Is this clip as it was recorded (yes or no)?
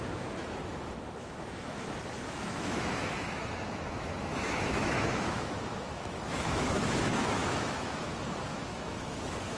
no